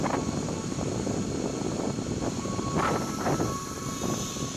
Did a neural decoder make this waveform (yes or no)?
no